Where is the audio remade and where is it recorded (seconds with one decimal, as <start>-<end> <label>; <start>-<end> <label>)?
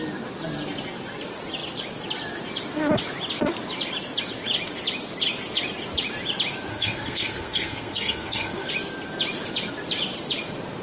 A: 0.0-6.7 recorded; 6.7-8.7 remade; 8.7-10.8 recorded